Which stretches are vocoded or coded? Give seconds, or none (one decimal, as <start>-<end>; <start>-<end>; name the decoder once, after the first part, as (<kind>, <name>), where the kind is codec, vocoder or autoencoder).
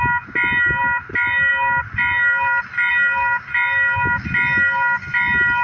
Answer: none